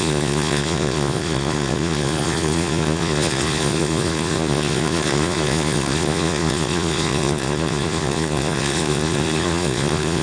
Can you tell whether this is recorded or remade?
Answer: remade